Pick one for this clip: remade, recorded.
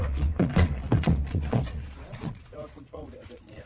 remade